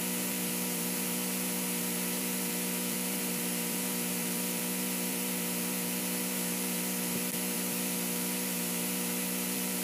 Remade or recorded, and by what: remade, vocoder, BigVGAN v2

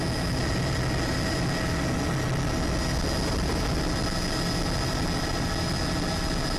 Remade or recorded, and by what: recorded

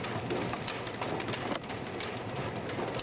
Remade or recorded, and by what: recorded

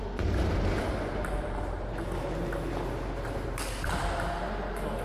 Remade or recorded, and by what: recorded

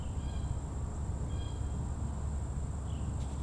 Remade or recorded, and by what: recorded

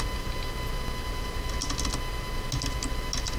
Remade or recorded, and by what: recorded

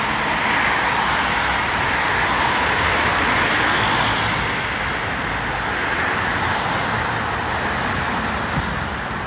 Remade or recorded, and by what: recorded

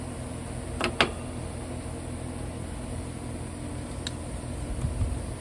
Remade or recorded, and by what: recorded